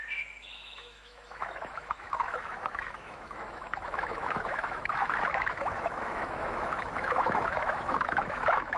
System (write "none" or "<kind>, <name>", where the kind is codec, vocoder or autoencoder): autoencoder, DAC-VAE